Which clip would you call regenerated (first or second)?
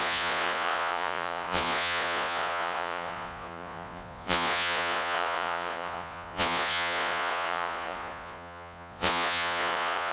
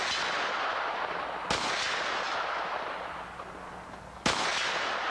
first